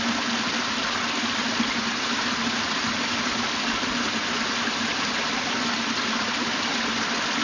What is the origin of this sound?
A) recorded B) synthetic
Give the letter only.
A